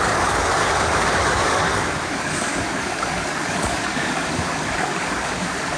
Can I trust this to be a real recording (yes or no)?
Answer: no